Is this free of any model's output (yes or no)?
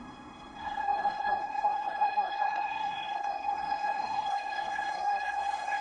no